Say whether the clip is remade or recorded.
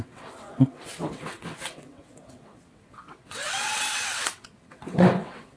remade